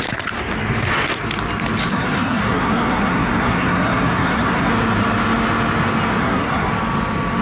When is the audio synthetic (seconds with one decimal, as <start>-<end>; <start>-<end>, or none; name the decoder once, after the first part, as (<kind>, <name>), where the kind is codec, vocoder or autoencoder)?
1.9-4.7 (codec, SNAC); 6.2-6.7